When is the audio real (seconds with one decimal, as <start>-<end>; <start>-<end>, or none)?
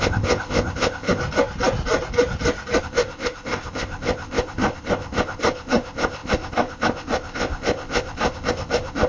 1.2-2.8